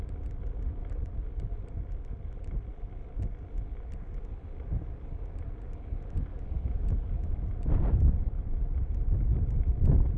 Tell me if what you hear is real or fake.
real